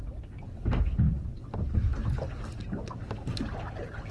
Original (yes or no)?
yes